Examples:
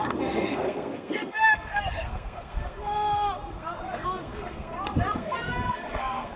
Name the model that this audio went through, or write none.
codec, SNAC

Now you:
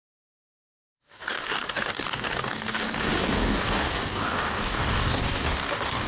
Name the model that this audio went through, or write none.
codec, DAC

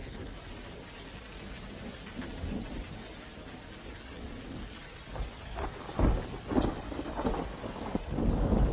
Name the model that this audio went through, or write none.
none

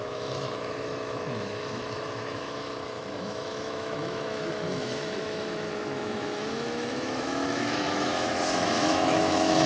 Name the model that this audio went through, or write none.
autoencoder, DAC-VAE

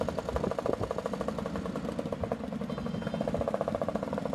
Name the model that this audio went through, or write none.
none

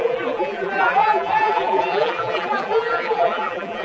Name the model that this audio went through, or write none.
vocoder, BigVGAN v2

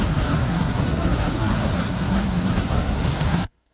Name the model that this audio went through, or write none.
codec, SNAC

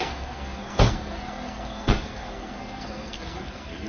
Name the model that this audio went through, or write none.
codec, SNAC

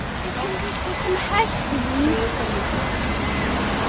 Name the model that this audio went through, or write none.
none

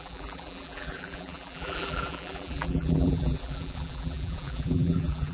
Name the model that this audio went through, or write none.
vocoder, BigVGAN v2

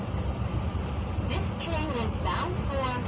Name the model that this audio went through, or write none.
none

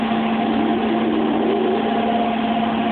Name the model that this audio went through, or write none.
none